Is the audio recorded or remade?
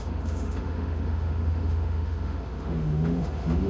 remade